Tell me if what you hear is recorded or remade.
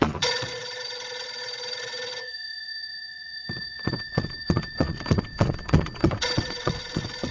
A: remade